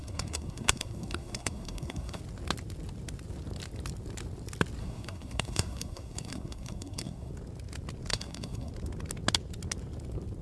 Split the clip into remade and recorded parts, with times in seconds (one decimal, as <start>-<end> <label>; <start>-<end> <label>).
0.0-2.2 remade; 2.2-4.8 recorded; 4.8-7.3 remade; 7.3-8.1 recorded; 8.1-8.7 remade; 8.7-10.4 recorded